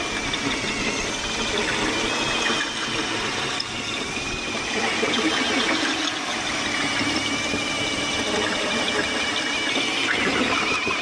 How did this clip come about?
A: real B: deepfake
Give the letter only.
A